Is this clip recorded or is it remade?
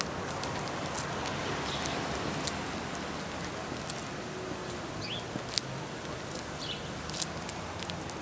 recorded